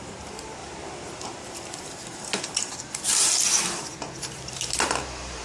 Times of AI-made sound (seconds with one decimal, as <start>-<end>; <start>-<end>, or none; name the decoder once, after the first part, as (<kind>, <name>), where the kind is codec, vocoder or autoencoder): 0.0-5.4 (vocoder, BigVGAN v2)